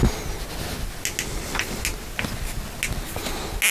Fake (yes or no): no